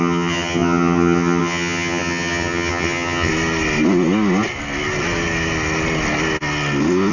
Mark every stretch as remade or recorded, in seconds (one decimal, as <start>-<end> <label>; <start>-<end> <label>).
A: 0.0-3.3 remade; 3.3-7.1 recorded